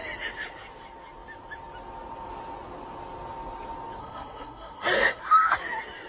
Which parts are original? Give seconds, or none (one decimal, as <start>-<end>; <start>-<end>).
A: 0.0-4.0; 5.2-6.1